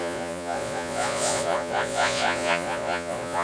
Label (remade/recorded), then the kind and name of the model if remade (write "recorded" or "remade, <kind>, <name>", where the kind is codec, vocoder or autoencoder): remade, vocoder, Vocos